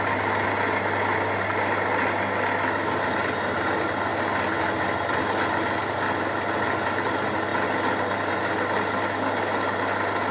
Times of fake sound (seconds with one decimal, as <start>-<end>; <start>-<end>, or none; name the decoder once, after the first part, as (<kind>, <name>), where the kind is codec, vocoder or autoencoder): 7.5-8.3 (vocoder, BigVGAN v2)